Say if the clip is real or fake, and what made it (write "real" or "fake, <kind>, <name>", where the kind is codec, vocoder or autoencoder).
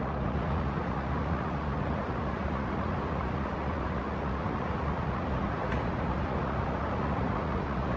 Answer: fake, vocoder, Vocos